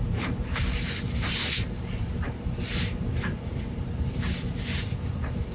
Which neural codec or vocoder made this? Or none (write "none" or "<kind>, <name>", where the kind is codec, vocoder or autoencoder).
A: vocoder, BigVGAN v2